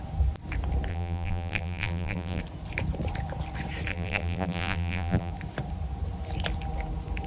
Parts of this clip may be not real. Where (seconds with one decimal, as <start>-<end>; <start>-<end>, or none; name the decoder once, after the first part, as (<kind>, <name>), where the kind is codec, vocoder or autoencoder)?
0.9-2.4 (vocoder, BigVGAN v2); 3.9-5.3